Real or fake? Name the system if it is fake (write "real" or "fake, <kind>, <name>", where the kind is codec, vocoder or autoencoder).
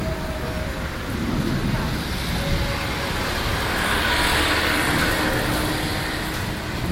real